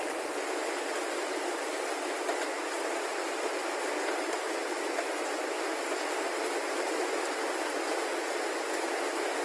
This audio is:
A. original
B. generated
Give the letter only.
A